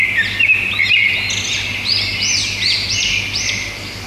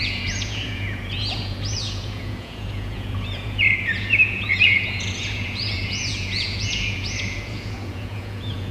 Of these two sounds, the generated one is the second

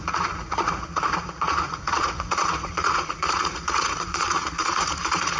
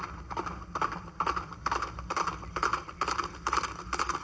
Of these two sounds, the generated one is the first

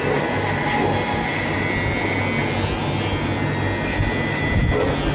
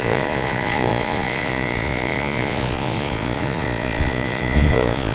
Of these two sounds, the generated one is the second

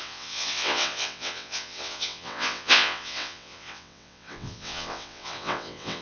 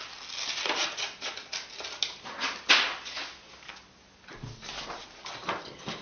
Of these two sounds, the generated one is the first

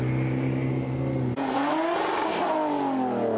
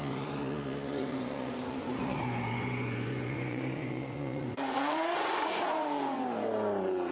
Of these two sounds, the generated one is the second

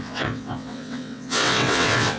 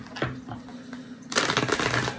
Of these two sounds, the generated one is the first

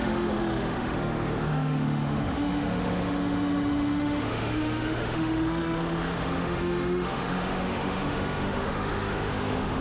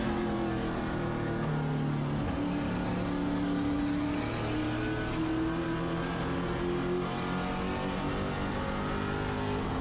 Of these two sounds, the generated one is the first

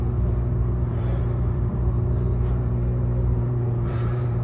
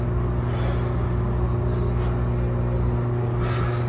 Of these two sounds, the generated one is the first